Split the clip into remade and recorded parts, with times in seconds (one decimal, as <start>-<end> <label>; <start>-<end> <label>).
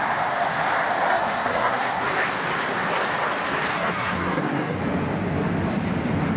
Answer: 0.0-1.1 recorded; 1.1-2.0 remade; 2.0-3.7 recorded; 3.7-4.8 remade; 4.8-6.4 recorded